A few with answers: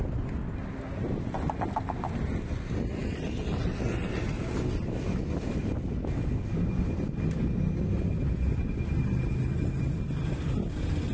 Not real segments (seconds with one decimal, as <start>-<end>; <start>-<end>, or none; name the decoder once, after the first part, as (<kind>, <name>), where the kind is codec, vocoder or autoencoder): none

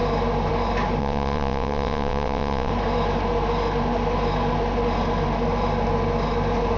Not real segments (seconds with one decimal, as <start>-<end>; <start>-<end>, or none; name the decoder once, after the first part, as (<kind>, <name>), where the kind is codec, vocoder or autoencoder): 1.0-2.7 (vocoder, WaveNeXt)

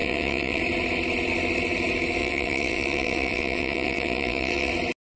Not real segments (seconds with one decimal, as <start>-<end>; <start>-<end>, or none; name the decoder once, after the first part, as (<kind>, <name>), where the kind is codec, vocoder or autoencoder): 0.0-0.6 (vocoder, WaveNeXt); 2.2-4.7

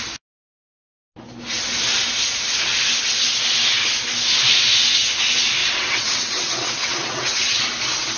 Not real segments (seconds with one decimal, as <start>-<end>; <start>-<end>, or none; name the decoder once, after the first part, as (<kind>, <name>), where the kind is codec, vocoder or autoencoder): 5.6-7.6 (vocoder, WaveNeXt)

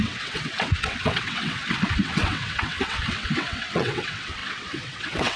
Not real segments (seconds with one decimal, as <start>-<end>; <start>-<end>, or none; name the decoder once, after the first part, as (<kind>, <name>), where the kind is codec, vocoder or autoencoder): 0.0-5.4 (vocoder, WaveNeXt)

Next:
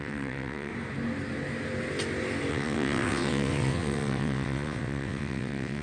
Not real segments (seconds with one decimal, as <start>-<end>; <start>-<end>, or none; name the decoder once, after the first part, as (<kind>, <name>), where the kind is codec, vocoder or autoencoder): 0.0-0.7 (vocoder, WaveNeXt); 2.5-5.8

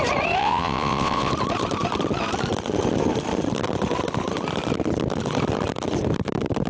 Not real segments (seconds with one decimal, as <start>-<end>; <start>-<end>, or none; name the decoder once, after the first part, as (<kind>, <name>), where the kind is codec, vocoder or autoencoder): 0.4-1.3 (vocoder, WaveNeXt)